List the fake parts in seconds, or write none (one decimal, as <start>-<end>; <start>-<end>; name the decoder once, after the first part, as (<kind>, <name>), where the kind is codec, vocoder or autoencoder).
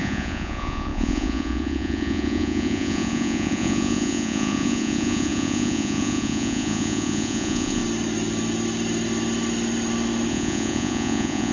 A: 0.0-7.8 (vocoder, Vocos); 10.3-11.5